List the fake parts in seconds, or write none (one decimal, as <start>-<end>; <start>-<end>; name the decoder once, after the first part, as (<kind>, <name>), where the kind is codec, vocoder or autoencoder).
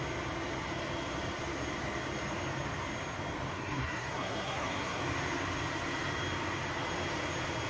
3.5-5.0 (codec, SNAC)